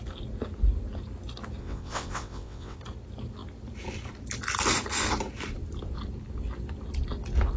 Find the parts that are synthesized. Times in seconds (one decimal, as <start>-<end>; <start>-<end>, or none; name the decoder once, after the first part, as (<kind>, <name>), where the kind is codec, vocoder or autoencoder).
1.6-2.8 (vocoder, WaveNeXt)